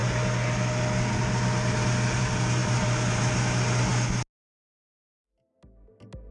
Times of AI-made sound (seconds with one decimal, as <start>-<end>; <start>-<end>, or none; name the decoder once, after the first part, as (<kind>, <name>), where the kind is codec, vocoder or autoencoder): 2.6-3.2 (vocoder, BigVGAN v2)